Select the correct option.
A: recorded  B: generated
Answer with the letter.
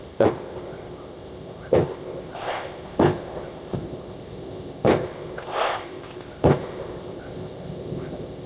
B